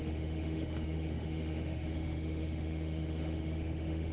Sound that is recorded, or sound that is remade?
remade